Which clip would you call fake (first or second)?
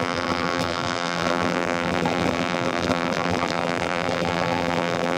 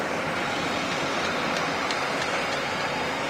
first